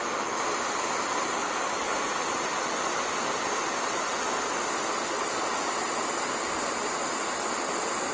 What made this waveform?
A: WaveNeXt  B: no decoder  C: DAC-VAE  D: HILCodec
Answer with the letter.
B